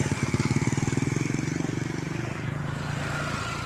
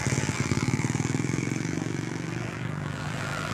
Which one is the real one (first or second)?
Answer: first